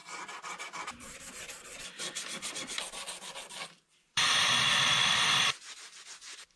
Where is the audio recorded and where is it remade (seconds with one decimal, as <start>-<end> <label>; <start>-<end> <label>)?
0.0-1.3 recorded; 1.3-6.6 remade